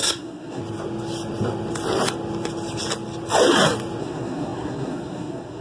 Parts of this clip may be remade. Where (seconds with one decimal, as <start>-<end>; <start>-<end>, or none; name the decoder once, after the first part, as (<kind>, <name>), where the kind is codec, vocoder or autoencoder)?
0.0-0.6 (codec, SNAC); 4.0-5.6